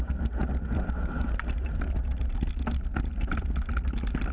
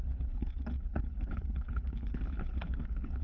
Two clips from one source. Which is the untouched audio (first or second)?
first